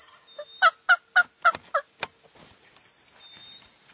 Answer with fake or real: real